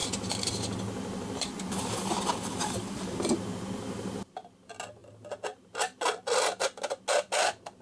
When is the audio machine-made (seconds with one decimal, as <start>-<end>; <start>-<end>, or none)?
none